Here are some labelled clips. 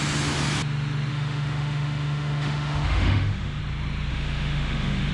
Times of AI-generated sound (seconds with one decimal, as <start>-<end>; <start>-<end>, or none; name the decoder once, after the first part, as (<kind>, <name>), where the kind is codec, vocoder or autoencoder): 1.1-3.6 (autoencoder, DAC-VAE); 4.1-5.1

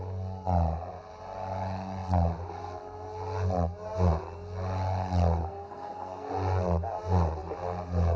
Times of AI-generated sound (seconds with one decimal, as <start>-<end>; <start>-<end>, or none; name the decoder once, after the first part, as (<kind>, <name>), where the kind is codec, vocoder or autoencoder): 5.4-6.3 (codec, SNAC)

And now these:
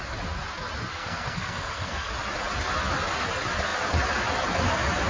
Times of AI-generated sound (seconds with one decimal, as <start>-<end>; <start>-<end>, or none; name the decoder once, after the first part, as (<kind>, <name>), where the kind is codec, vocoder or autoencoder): 0.9-2.1 (codec, SNAC)

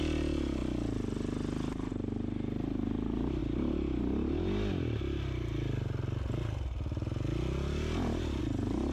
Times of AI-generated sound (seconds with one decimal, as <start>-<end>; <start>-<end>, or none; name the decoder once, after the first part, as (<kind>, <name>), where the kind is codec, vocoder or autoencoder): none

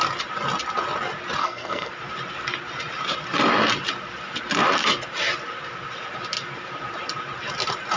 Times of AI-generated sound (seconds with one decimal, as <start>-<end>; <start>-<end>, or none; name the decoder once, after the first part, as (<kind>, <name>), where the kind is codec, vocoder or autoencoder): 1.4-1.9 (codec, SNAC)